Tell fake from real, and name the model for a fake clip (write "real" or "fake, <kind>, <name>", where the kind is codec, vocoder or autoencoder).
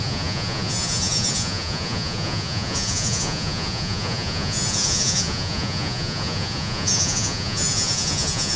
fake, vocoder, Vocos